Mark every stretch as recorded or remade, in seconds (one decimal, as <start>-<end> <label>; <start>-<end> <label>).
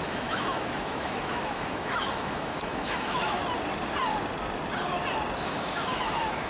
0.0-3.4 remade; 3.4-5.4 recorded; 5.4-6.5 remade